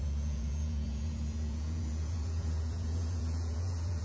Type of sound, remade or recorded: remade